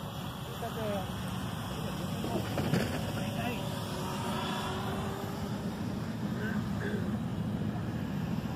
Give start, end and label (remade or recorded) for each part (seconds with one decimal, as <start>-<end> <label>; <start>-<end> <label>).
0.0-7.3 recorded; 7.3-7.9 remade; 7.9-8.6 recorded